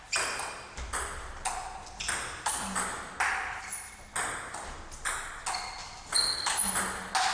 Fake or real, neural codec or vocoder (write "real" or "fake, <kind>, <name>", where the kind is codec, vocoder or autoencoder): real